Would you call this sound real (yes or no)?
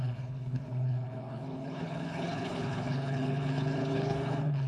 no